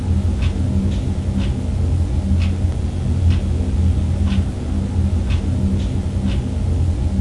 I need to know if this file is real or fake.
real